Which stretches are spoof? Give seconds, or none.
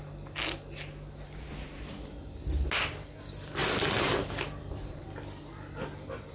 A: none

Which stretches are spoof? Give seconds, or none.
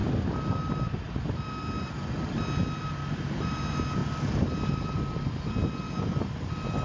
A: none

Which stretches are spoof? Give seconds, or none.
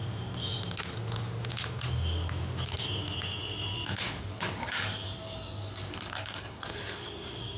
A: 4.2-7.6 (codec, DAC)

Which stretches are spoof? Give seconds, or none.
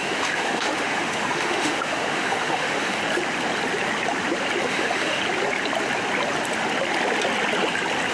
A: 0.0-3.0 (autoencoder, DAC-VAE); 4.6-5.2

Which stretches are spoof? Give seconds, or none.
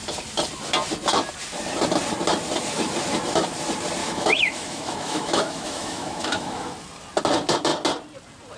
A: 4.0-6.7 (autoencoder, DAC-VAE)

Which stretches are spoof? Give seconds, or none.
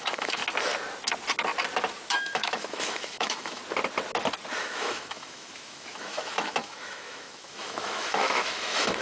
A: 0.0-0.4 (autoencoder, DAC-VAE); 2.1-3.6; 4.6-9.0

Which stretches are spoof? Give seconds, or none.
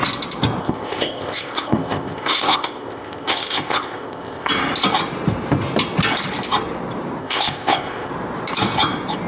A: 0.6-4.5 (codec, ZipCodec); 7.2-8.1